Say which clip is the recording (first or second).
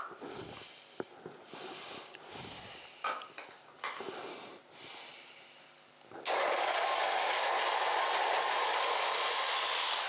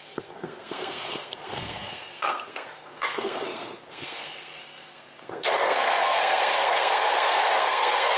first